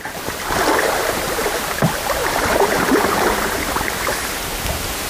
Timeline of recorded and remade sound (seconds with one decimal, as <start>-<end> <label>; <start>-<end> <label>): 0.0-2.2 recorded; 2.2-3.7 remade; 3.7-5.1 recorded